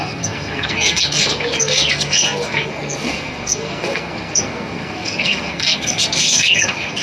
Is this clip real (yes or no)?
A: no